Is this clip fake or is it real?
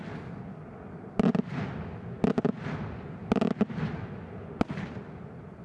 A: real